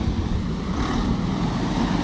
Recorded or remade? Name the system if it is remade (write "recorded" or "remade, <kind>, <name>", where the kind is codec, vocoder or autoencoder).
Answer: recorded